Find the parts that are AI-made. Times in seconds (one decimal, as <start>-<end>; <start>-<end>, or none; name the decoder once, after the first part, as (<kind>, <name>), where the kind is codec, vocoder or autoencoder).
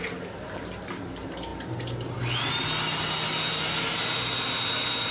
none